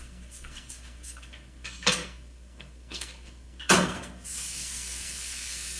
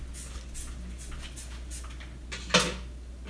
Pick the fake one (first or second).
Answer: first